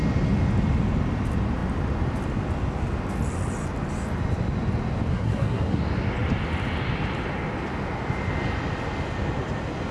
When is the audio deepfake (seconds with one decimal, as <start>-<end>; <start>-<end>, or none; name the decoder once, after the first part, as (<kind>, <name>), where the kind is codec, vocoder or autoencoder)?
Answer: 5.1-5.8 (codec, SNAC)